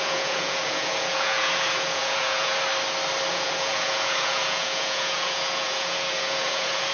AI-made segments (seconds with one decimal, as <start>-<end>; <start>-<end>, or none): 0.0-2.6; 3.3-6.9